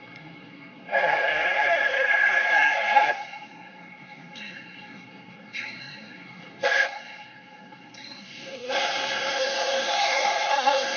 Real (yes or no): no